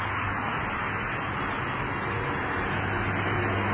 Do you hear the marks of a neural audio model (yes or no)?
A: no